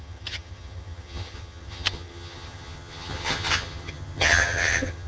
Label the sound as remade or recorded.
remade